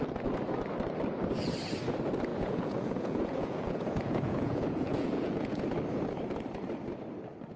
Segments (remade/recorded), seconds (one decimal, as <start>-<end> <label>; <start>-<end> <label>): 0.0-2.3 recorded; 2.3-5.6 remade; 5.6-7.6 recorded